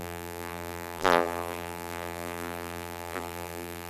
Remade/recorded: remade